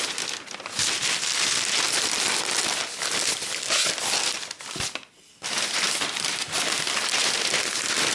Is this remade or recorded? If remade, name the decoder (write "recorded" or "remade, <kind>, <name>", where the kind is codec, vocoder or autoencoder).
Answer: recorded